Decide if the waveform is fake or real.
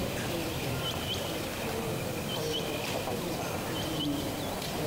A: fake